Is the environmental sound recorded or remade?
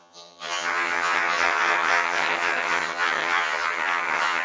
remade